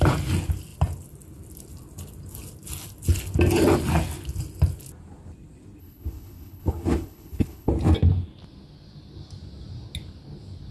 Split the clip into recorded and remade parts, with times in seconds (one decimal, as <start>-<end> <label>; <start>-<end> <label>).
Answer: 0.0-5.8 recorded; 5.8-7.7 remade; 7.7-10.7 recorded